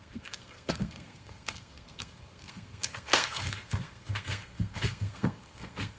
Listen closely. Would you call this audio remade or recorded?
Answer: remade